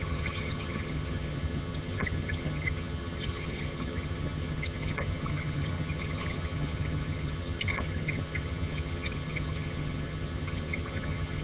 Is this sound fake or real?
fake